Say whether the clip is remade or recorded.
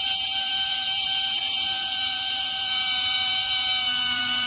remade